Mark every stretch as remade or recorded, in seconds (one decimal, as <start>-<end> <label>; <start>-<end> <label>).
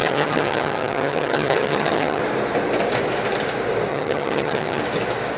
0.0-2.2 remade; 2.2-3.9 recorded; 3.9-4.8 remade; 4.8-5.4 recorded